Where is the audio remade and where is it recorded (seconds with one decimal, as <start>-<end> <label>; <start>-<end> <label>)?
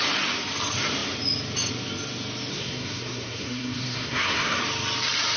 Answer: 0.0-2.5 recorded; 2.5-4.6 remade; 4.6-5.4 recorded